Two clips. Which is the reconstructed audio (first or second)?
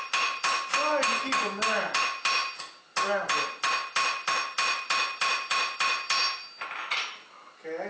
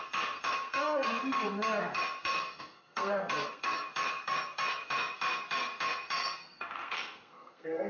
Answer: second